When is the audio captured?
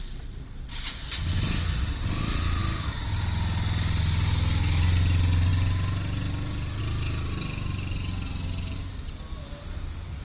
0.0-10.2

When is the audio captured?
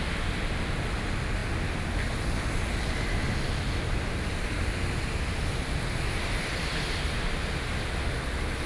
0.0-8.7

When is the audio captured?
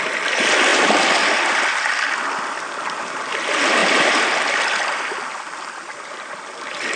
0.0-7.0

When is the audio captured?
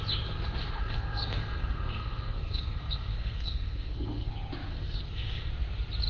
0.0-0.6; 4.3-4.7; 5.5-6.1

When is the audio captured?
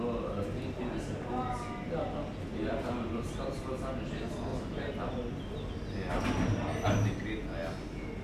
0.0-2.5; 3.8-4.5; 5.1-8.2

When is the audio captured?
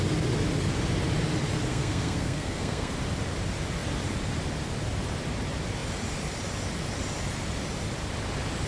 0.0-1.7; 2.9-8.7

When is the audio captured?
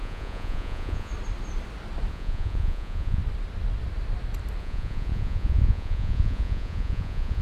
1.1-2.1; 3.2-4.6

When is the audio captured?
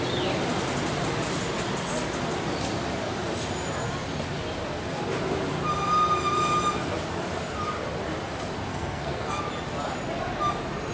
0.0-8.7; 9.4-10.9